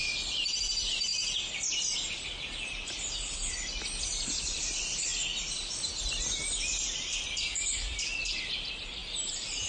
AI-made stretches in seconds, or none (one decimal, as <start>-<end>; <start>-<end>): 9.0-9.7